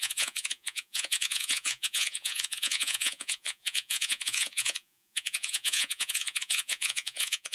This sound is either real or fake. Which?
fake